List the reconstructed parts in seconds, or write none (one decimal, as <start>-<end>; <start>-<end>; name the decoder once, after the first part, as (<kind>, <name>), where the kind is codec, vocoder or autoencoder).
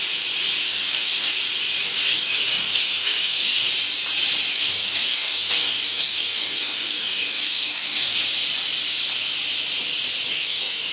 0.6-1.4 (codec, DAC); 1.8-3.7; 4.5-8.2; 10.3-10.9